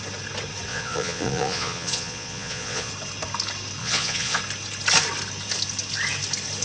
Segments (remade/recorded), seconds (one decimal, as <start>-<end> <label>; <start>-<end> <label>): 0.0-0.7 recorded; 0.7-2.9 remade; 2.9-3.8 recorded; 3.8-4.4 remade; 4.4-6.6 recorded